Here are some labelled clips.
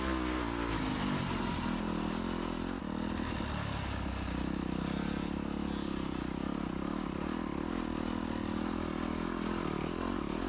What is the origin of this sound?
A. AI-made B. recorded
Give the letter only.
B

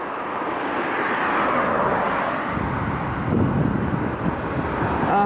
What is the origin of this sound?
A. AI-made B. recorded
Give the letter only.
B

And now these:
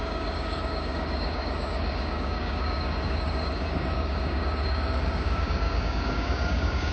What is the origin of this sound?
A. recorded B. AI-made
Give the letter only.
B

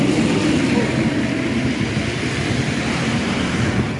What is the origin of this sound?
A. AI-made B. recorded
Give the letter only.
B